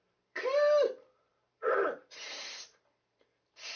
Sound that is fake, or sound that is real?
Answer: fake